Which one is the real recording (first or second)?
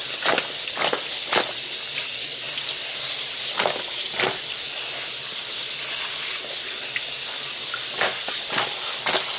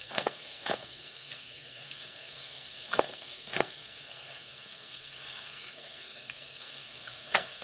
first